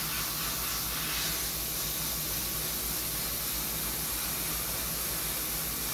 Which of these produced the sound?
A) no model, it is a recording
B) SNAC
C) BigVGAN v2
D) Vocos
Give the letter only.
A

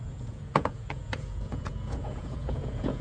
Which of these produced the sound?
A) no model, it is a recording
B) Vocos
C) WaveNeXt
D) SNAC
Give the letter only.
B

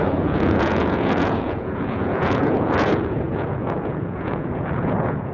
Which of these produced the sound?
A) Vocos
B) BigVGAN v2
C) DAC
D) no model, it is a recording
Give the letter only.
A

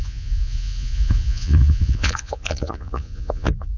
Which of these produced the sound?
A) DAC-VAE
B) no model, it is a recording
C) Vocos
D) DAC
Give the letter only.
C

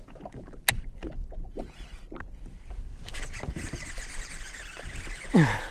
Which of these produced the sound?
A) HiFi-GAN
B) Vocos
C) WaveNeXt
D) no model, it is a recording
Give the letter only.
D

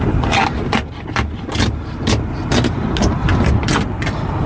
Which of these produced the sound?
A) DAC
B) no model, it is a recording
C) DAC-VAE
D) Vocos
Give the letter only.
B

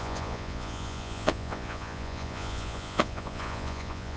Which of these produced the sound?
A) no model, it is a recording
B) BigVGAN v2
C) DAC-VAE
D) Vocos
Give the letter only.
D